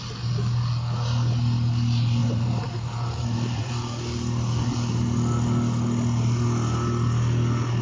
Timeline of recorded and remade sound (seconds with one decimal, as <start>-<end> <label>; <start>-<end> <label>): 0.0-2.2 recorded; 2.2-3.7 remade; 3.7-7.8 recorded